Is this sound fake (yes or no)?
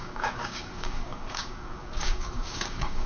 yes